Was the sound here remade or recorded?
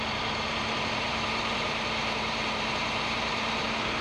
remade